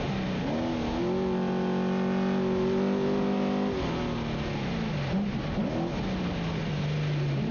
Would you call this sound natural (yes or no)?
yes